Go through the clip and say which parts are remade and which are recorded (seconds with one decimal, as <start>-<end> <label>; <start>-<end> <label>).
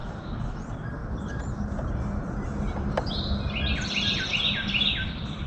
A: 0.0-0.6 remade; 0.6-5.5 recorded